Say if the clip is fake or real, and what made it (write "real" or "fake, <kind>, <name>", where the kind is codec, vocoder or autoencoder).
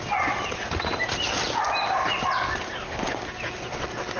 real